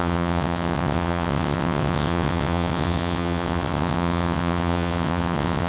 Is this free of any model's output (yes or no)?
no